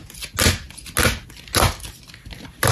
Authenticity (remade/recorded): recorded